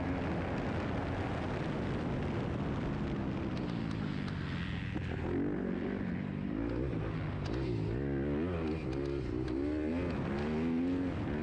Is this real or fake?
real